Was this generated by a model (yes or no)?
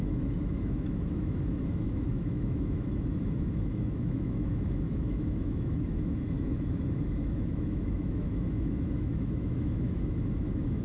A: yes